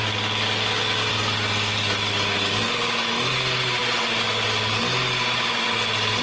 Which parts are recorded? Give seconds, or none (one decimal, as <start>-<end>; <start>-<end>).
0.0-6.2